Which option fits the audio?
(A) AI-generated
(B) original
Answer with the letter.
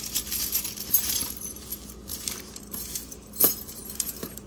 A